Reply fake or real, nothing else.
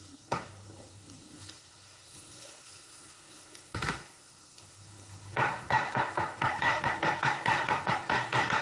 fake